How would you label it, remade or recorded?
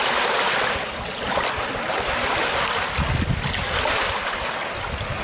recorded